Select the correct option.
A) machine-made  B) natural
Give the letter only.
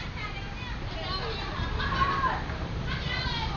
B